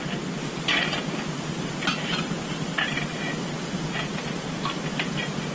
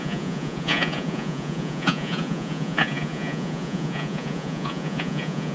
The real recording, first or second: first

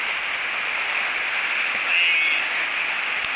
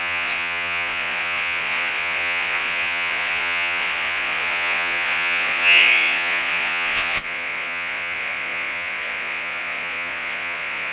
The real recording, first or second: first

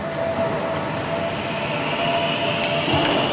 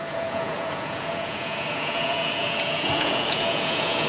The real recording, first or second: first